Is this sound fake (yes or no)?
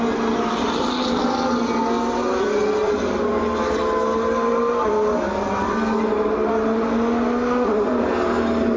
no